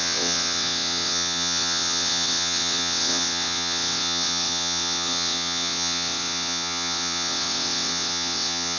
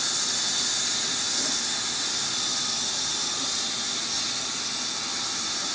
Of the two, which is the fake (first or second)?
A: first